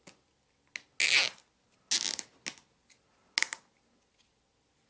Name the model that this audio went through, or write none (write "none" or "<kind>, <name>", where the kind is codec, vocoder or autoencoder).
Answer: none